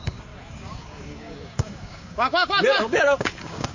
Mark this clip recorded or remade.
remade